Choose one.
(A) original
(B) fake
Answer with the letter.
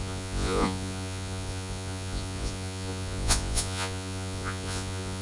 B